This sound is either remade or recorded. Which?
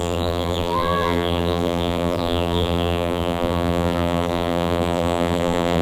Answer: remade